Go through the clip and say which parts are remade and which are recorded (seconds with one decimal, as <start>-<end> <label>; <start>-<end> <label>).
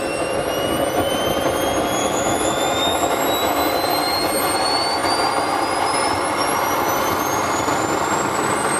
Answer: 0.0-2.0 recorded; 2.0-3.2 remade; 3.2-8.8 recorded